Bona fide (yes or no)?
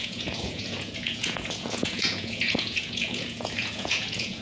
no